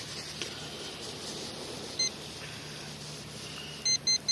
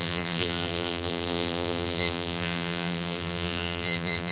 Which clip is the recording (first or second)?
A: first